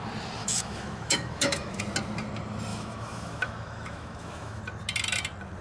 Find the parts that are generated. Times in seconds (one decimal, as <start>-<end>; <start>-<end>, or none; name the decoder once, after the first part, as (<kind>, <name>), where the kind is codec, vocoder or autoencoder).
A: 0.4-1.8 (autoencoder, DAC-VAE); 2.7-4.6